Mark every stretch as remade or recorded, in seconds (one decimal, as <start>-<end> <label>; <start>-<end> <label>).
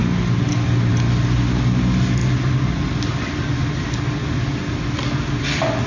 0.0-5.9 recorded